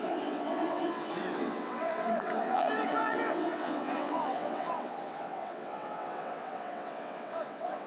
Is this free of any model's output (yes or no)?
no